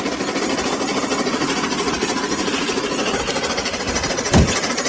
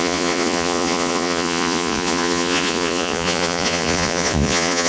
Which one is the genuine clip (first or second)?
first